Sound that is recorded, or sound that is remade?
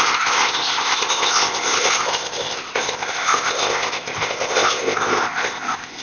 remade